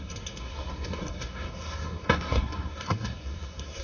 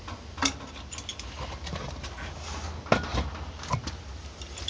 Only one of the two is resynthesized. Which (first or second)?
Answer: first